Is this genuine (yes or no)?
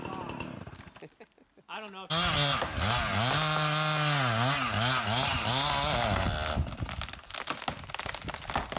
yes